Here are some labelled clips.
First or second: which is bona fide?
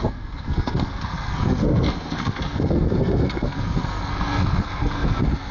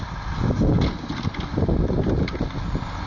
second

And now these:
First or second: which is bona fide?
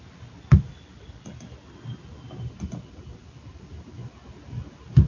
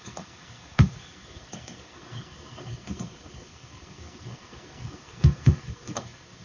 first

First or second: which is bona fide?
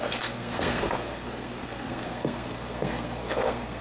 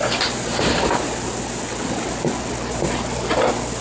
second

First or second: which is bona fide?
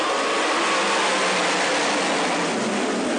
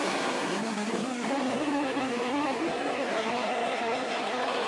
first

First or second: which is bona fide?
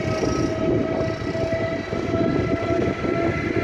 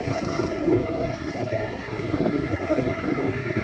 first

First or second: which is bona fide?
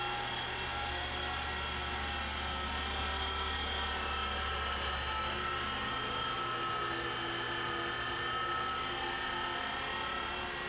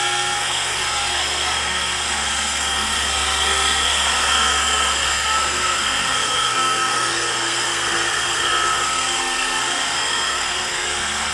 first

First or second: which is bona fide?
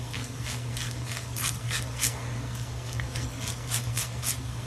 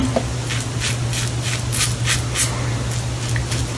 second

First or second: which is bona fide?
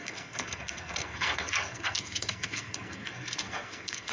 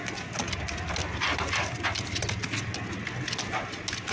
second